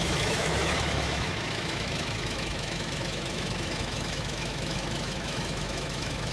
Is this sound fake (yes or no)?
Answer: yes